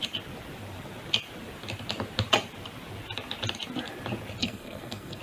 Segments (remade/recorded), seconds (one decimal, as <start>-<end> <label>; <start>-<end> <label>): 0.0-4.4 recorded; 4.4-5.2 remade